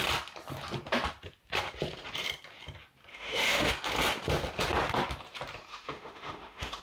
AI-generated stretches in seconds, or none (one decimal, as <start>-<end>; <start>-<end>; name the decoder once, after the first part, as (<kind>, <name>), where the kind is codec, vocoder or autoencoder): 3.1-3.7 (autoencoder, DAC-VAE); 5.7-6.8